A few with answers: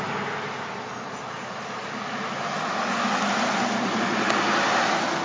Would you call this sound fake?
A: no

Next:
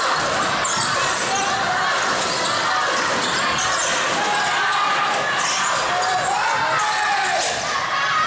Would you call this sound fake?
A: no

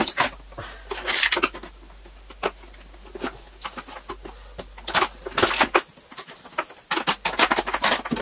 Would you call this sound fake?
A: no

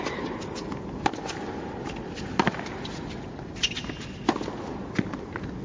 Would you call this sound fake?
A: no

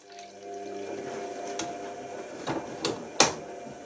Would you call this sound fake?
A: no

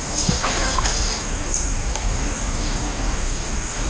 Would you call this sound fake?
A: yes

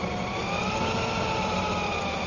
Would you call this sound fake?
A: no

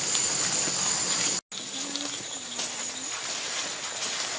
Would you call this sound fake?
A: no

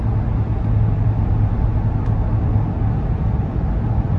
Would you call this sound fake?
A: no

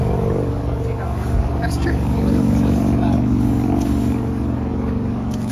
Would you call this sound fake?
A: yes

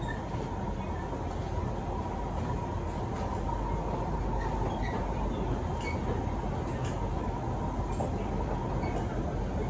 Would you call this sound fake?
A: no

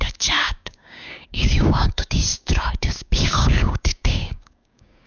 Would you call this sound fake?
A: yes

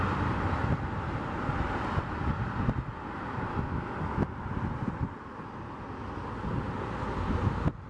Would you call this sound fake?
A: no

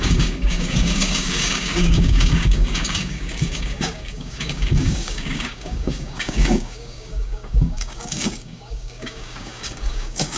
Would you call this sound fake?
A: yes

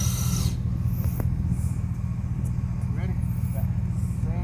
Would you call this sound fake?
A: no